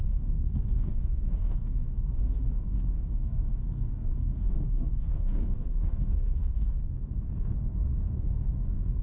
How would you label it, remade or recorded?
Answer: remade